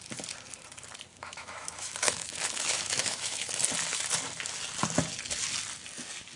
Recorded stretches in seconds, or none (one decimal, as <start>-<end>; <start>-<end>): 0.0-1.1; 3.5-6.4